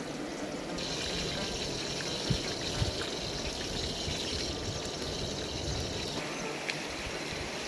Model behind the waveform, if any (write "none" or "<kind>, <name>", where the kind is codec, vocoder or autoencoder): none